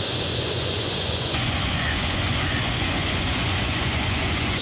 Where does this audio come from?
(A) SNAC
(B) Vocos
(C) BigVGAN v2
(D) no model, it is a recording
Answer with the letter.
B